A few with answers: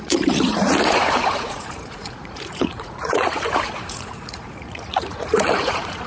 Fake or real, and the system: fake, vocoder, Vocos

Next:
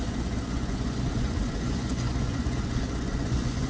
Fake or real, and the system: fake, vocoder, Vocos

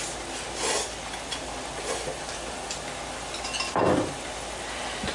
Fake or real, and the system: real